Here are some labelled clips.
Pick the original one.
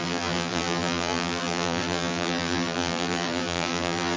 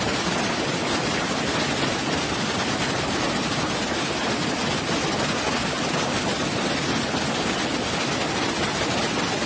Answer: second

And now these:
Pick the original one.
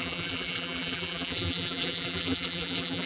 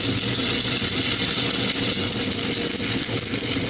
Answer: second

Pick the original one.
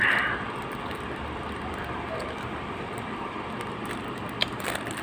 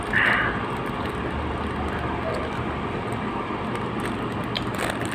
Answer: second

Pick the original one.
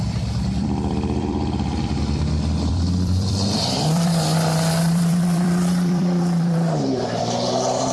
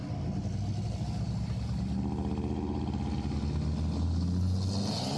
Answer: second